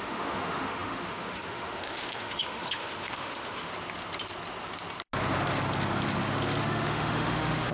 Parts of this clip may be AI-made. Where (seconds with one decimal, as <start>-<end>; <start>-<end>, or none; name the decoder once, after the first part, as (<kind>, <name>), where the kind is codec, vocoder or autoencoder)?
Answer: 0.0-3.7 (autoencoder, DAC-VAE); 6.6-7.7